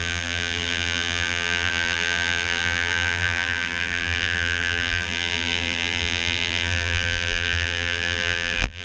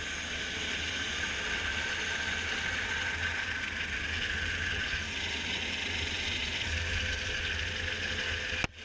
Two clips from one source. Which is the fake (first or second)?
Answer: first